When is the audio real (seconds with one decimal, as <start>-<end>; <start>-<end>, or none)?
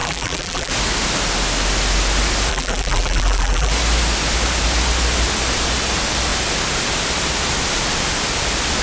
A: 0.7-2.5; 3.7-8.8